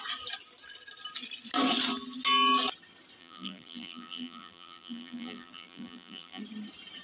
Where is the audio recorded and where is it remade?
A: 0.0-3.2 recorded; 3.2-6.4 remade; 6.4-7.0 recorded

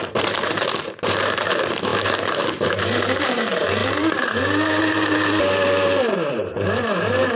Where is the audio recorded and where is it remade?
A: 0.0-7.4 remade